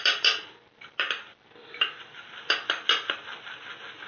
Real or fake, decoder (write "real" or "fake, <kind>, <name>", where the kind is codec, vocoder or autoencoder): real